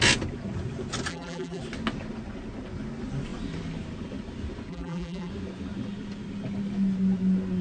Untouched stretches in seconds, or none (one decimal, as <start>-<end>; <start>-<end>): 0.0-1.1; 1.6-4.7; 5.3-7.6